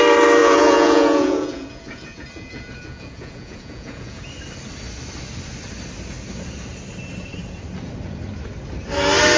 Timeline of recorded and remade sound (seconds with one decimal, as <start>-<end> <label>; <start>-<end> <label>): 0.0-0.4 recorded; 0.4-4.2 remade; 4.2-9.4 recorded